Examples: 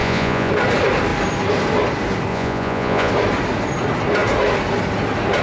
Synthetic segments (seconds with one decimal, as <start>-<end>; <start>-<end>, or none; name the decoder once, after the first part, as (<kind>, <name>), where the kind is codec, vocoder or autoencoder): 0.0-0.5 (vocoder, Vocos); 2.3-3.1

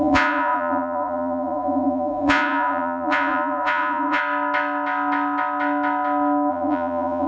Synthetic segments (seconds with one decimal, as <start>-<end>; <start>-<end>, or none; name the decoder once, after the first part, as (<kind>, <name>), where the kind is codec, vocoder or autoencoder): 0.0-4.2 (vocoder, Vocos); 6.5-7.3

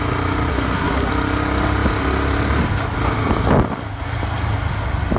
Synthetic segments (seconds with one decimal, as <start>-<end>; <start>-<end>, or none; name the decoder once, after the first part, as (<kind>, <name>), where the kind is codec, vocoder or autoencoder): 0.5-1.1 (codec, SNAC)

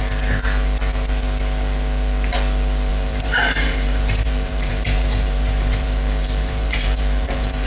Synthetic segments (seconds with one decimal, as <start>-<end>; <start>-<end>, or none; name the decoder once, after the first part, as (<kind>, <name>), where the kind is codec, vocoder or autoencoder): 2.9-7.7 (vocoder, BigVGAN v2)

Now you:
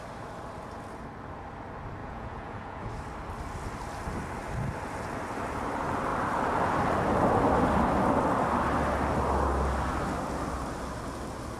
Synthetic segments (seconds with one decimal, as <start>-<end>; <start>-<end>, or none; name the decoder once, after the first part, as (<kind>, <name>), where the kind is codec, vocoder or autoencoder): 2.0-2.9 (vocoder, Vocos)

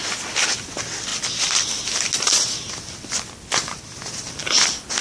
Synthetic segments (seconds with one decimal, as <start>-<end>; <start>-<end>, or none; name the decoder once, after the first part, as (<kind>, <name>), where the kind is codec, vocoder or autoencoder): none